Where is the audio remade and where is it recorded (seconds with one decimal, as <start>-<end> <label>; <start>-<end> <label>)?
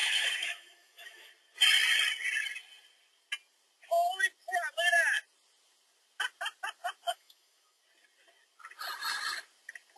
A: 0.0-1.3 remade; 1.3-7.1 recorded; 7.1-7.8 remade; 7.8-10.0 recorded